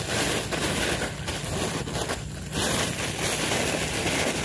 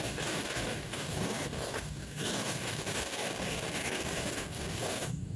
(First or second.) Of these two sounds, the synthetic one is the second